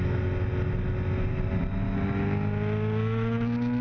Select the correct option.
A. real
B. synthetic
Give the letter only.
A